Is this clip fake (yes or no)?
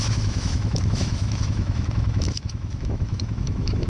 yes